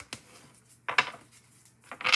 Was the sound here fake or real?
real